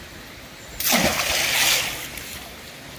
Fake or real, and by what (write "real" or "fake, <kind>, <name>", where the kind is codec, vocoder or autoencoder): real